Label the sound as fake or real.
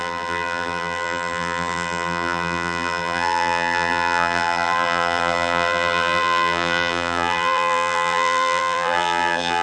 fake